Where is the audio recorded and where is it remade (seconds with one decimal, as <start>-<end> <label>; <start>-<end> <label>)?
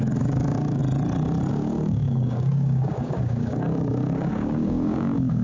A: 0.0-0.8 remade; 0.8-1.5 recorded; 1.5-5.4 remade